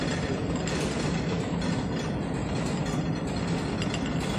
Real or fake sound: real